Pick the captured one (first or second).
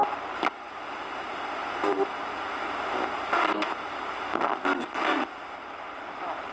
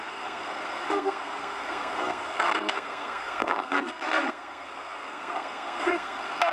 first